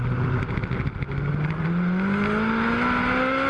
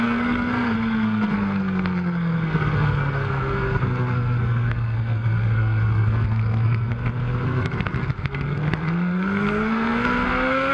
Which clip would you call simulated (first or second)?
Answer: second